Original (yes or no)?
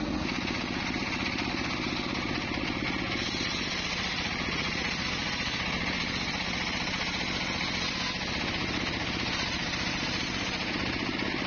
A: yes